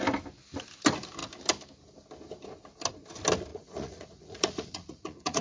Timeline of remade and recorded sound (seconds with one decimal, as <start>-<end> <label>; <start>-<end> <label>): 0.0-3.5 recorded; 3.5-5.4 remade